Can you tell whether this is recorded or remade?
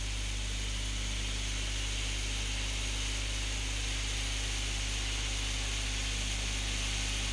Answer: recorded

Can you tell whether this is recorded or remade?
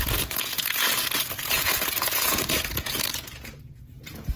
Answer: remade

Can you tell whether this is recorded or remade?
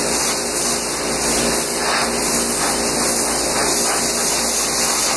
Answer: recorded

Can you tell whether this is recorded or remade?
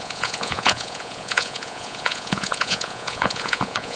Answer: remade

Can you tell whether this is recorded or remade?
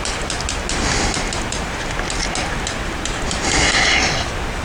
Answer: recorded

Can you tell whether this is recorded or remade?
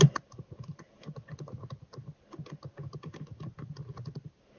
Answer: recorded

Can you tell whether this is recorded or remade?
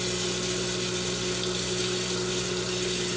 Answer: recorded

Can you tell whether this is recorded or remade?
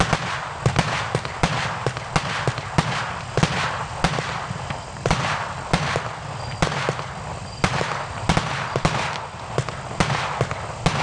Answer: recorded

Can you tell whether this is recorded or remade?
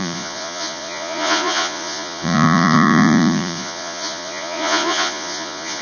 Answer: remade